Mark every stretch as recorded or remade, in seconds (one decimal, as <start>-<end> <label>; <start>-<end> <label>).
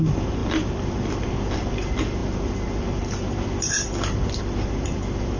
0.0-5.4 recorded